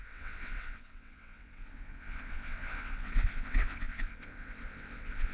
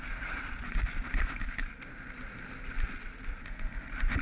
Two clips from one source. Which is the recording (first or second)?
second